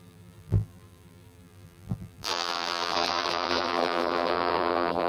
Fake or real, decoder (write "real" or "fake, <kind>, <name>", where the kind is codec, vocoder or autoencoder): fake, vocoder, BigVGAN v2